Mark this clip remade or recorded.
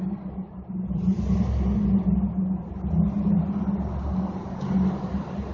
recorded